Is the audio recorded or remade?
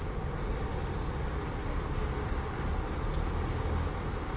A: recorded